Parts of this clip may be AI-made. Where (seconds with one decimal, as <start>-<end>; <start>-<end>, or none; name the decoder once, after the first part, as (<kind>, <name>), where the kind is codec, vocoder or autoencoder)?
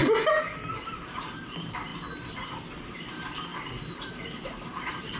0.7-1.9 (vocoder, BigVGAN v2); 2.9-5.2